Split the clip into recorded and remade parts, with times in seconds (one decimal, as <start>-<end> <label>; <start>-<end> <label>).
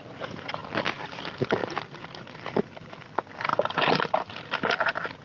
0.0-3.5 recorded; 3.5-4.0 remade; 4.0-5.2 recorded